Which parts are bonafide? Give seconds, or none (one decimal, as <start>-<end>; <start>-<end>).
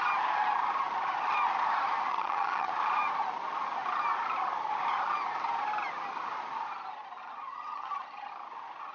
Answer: 0.0-2.1; 2.7-7.2; 8.3-8.9